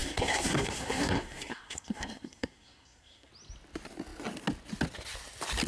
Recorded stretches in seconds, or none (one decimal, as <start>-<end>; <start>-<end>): 3.3-5.7